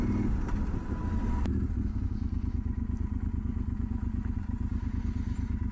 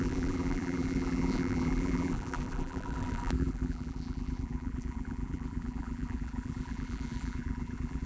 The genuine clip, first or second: first